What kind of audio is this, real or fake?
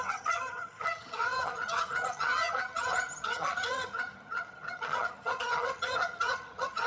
fake